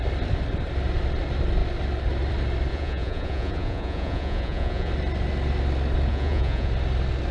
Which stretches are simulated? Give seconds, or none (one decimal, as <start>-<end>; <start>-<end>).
2.7-4.9; 6.1-6.7